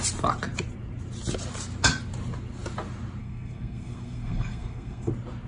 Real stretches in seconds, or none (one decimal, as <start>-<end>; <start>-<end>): 0.0-3.2; 5.1-5.5

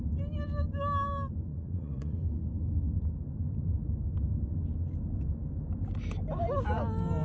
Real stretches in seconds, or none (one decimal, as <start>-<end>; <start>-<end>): 0.0-1.5; 2.2-7.2

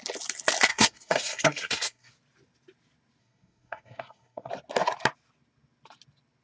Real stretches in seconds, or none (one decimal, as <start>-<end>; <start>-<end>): 0.0-0.7; 2.1-3.2; 4.5-6.4

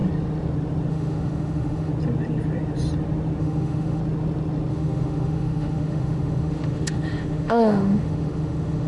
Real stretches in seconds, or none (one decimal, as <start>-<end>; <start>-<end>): 0.0-0.9; 1.9-3.4; 4.0-4.7

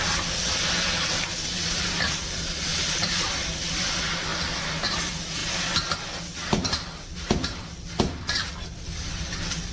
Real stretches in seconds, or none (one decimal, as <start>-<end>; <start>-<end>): 0.0-9.7

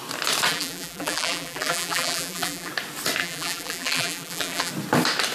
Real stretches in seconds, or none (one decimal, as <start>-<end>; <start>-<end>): 0.0-0.5; 2.7-3.2; 4.7-5.3

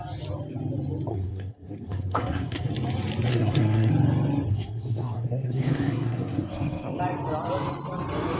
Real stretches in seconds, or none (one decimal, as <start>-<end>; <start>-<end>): 0.0-1.1; 2.7-3.3; 3.9-4.5; 7.0-8.4